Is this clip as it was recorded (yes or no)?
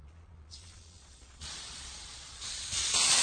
no